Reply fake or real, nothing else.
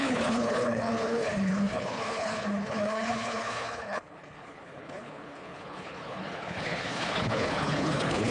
fake